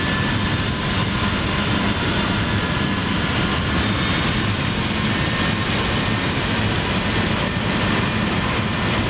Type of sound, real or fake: real